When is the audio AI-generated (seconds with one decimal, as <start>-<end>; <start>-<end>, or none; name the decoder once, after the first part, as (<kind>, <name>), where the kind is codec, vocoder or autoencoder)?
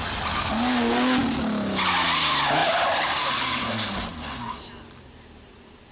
2.6-3.6 (vocoder, BigVGAN v2)